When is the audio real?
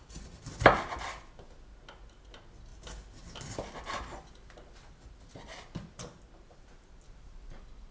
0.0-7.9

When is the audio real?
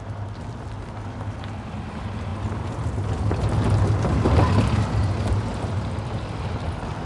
0.0-7.1